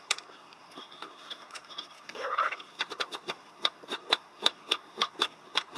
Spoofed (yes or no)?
yes